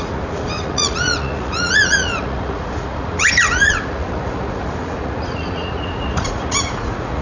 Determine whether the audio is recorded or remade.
remade